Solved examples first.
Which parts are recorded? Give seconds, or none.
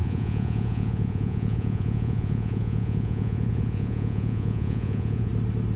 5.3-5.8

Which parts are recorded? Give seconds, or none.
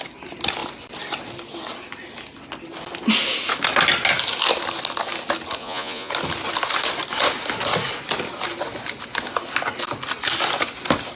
0.0-5.6; 6.1-11.2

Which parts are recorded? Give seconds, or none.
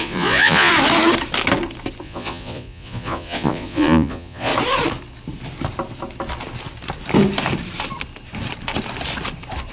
0.7-2.0; 4.5-9.7